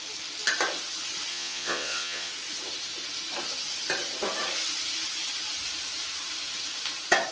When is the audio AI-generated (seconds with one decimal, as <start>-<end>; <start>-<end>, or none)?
1.3-2.3